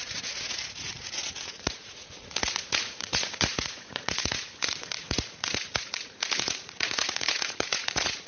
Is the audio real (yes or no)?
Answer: no